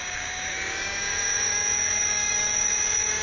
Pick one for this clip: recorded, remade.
remade